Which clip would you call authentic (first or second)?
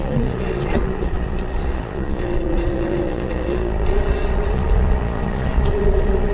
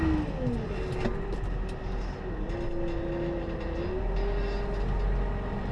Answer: second